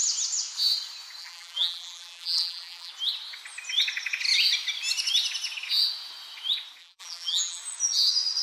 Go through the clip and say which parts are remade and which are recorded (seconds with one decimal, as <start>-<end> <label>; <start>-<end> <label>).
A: 0.0-1.2 recorded; 1.2-2.9 remade; 2.9-6.8 recorded; 6.8-7.6 remade; 7.6-8.4 recorded